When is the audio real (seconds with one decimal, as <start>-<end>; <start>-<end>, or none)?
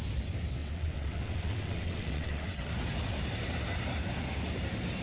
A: 0.0-0.6; 2.7-5.0